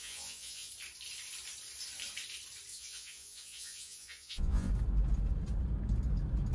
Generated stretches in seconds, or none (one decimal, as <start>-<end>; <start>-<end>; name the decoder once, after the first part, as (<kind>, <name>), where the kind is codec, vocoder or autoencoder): 0.0-0.7 (vocoder, Vocos); 2.7-4.7

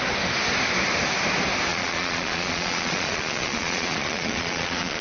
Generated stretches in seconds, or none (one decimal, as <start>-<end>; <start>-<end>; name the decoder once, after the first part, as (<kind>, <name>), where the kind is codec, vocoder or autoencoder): 1.7-5.0 (vocoder, Vocos)

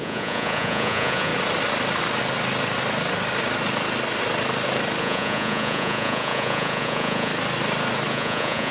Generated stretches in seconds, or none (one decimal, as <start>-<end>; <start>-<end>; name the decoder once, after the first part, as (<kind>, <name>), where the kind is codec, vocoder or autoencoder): 0.0-1.3 (vocoder, Vocos); 5.0-7.3; 8.1-8.7

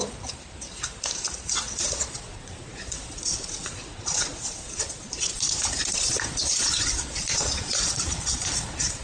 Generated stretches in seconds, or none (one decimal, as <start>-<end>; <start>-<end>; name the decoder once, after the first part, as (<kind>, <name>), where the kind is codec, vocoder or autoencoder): 1.5-9.0 (vocoder, Vocos)

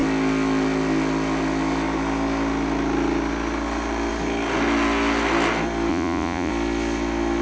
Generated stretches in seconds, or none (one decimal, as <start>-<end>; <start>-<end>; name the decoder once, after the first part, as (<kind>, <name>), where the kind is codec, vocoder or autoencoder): 5.9-6.5 (vocoder, Vocos)

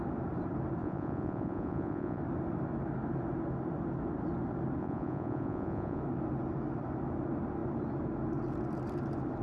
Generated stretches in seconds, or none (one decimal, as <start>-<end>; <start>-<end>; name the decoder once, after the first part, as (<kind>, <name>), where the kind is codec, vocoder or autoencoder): 0.8-2.2 (vocoder, Vocos); 4.8-6.0